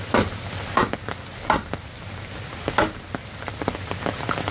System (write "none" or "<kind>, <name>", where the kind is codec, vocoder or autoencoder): none